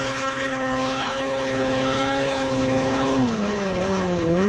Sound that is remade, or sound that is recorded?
remade